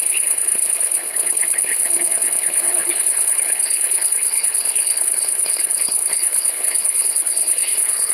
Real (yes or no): no